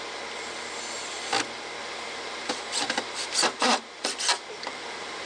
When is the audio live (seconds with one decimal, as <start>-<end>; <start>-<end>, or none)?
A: 0.0-1.8; 4.2-5.3